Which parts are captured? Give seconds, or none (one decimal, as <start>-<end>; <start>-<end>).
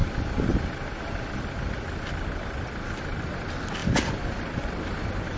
0.0-5.4